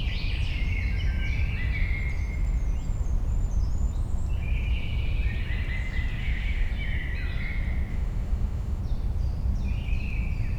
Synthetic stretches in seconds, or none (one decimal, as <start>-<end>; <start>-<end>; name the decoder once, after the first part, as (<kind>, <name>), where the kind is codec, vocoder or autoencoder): 6.2-6.7 (autoencoder, DAC-VAE); 7.9-8.8